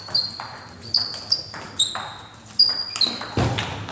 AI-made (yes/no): no